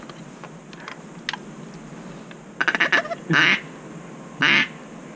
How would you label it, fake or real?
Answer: real